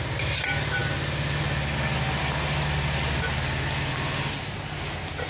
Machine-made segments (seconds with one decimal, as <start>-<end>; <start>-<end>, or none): none